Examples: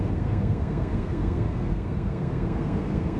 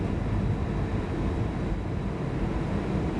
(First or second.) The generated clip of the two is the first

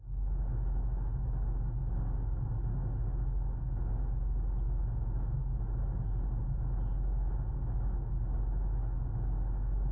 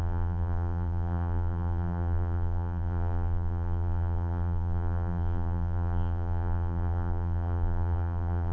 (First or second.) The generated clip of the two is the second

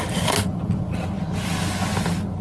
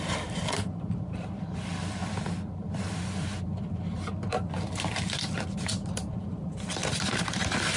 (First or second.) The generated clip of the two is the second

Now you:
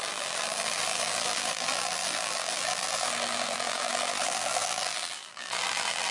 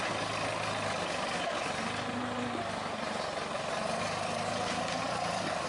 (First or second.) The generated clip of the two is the first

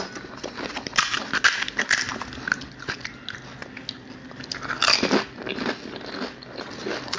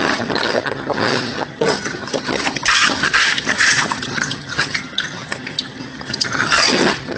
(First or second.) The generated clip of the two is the second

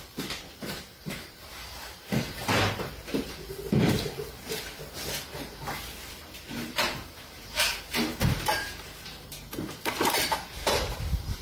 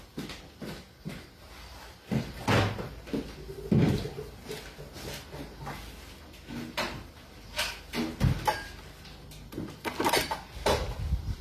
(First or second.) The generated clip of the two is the first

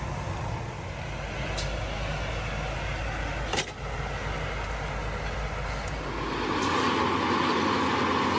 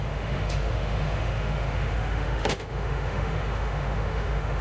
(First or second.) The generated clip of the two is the second